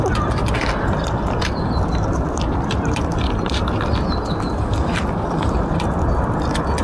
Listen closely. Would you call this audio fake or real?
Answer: fake